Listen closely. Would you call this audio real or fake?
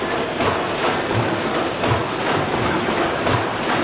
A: real